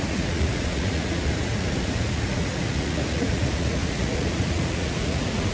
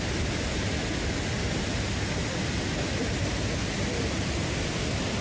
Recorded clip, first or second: second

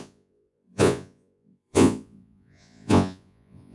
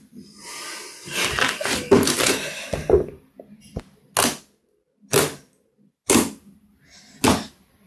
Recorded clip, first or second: second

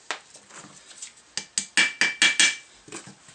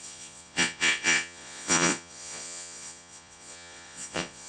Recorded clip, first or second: first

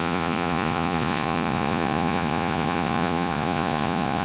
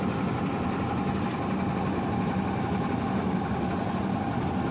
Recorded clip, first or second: second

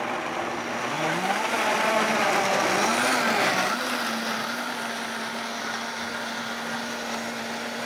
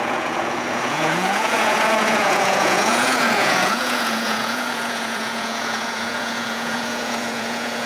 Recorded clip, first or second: first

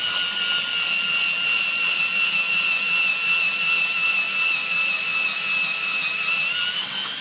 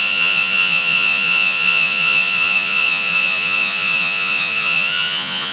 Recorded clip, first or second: first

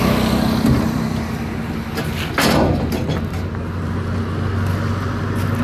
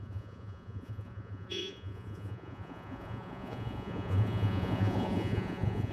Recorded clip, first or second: first